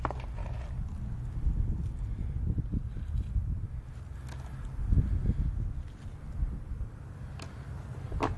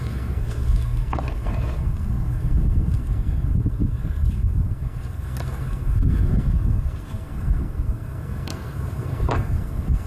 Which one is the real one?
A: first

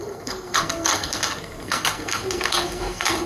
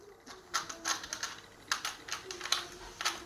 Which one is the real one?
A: second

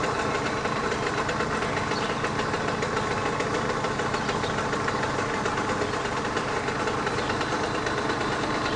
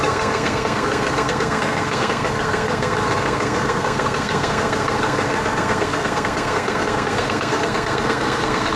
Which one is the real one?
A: first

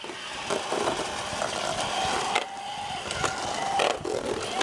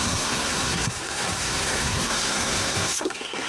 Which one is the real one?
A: first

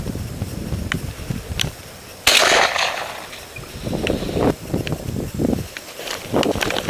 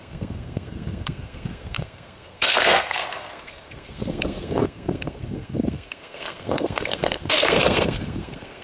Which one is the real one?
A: first